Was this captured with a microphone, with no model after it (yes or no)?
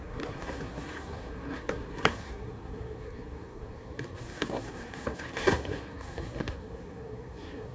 no